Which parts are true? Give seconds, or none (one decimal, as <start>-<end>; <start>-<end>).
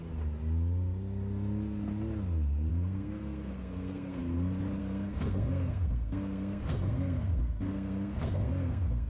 0.0-2.7; 4.2-4.8